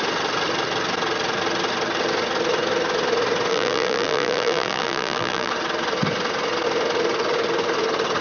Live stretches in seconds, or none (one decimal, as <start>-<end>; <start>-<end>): 0.0-3.5; 5.5-8.2